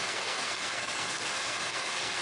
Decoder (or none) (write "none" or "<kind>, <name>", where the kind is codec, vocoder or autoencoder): codec, SNAC